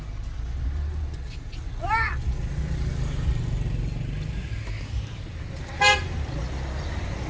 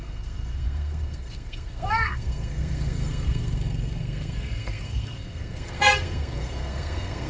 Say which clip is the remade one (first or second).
second